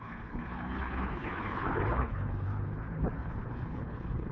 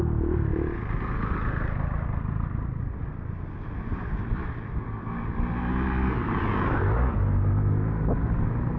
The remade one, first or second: first